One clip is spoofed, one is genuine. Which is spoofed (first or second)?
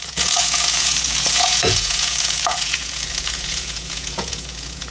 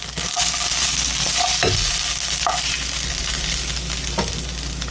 first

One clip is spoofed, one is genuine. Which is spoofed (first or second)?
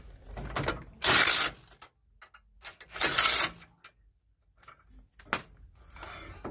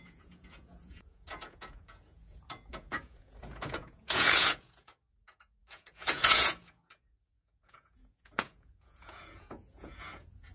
second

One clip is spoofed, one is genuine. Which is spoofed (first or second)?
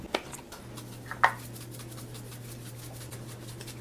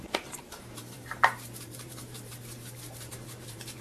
second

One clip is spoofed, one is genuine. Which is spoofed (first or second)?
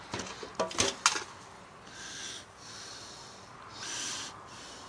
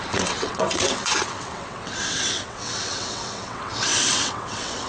second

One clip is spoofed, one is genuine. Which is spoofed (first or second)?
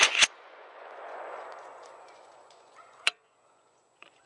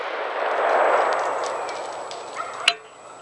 first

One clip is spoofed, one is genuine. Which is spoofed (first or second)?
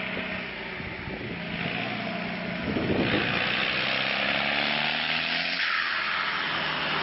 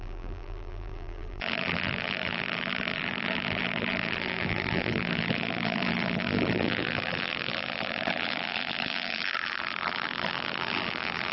second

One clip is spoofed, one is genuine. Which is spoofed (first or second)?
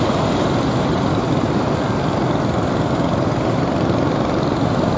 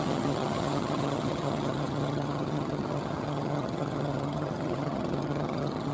second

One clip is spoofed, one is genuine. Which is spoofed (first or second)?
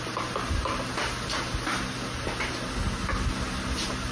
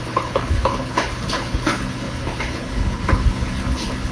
second